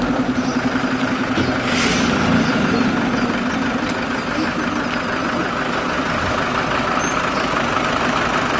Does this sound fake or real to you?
real